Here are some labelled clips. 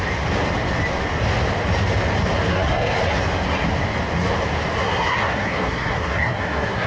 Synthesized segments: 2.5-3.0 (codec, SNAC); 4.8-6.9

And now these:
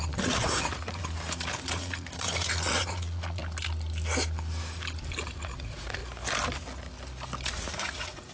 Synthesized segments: 0.0-1.0 (vocoder, Vocos); 1.7-3.4; 5.2-6.0; 7.5-8.3

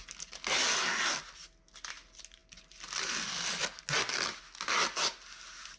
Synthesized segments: none

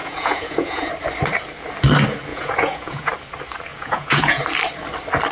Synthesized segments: 0.0-0.9 (vocoder, Vocos); 2.3-3.1; 3.7-4.4

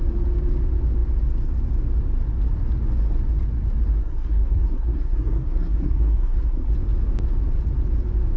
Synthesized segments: 4.0-6.7 (codec, SNAC)

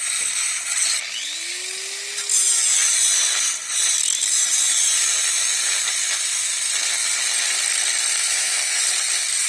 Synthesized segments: 8.2-8.8 (autoencoder, DAC-VAE)